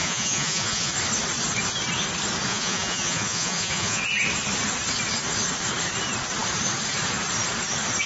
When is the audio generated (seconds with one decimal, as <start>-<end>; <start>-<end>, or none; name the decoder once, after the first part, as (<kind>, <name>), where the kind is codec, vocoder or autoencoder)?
0.0-0.9 (vocoder, Vocos); 2.5-4.0